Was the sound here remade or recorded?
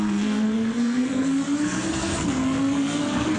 remade